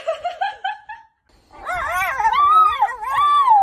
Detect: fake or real real